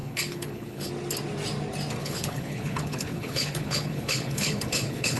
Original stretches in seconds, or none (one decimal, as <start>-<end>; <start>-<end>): 0.9-2.0